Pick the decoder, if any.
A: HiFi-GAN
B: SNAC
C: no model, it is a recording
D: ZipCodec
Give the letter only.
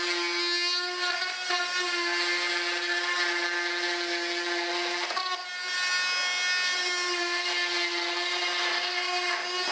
C